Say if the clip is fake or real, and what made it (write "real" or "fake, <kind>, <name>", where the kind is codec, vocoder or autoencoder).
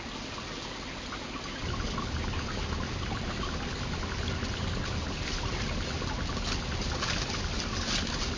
real